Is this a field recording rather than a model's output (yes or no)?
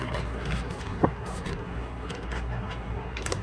no